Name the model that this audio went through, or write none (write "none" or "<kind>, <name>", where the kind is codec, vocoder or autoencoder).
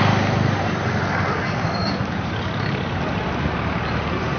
none